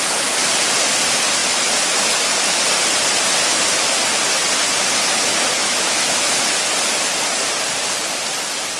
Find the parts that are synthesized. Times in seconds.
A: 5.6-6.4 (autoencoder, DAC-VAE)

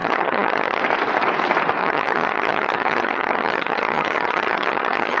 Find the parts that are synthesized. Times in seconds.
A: 0.0-0.8 (vocoder, HiFi-GAN); 1.8-5.2

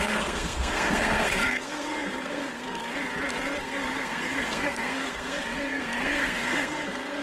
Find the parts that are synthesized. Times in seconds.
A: 0.0-2.9 (codec, SNAC); 3.6-7.2

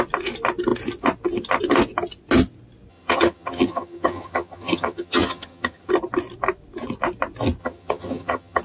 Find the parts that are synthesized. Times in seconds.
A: 2.9-5.9 (vocoder, HiFi-GAN); 7.6-8.6

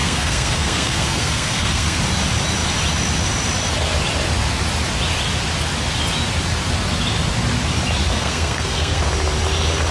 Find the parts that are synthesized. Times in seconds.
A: 0.0-2.0 (codec, SNAC); 8.1-9.1

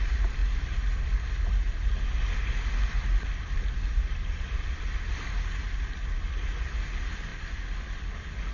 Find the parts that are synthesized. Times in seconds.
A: none

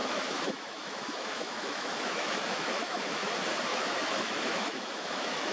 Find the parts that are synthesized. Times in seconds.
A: 0.0-3.3 (autoencoder, DAC-VAE); 3.7-5.5